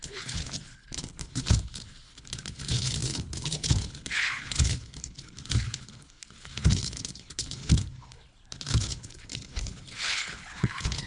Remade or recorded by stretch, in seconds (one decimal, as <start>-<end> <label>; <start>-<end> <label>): 0.0-11.1 remade